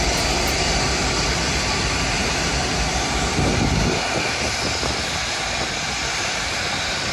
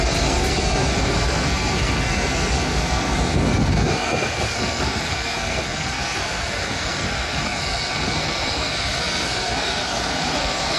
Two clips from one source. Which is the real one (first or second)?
first